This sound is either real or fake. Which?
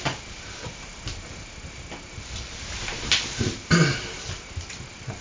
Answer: real